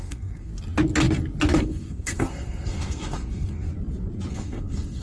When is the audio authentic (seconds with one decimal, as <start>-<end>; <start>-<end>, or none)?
0.5-1.6; 3.7-4.3